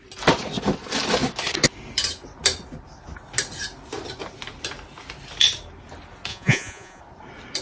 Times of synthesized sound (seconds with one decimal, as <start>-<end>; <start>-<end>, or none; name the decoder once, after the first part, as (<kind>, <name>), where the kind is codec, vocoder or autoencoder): 6.3-7.0 (vocoder, Vocos)